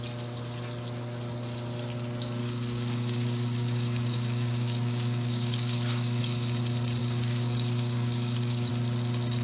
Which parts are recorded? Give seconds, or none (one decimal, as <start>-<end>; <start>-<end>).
0.0-2.4; 6.2-7.0; 8.7-9.4